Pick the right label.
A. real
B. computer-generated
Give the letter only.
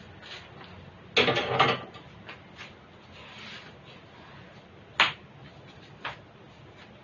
A